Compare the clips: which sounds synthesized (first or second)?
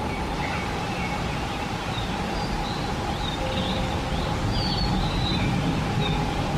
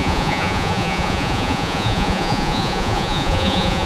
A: second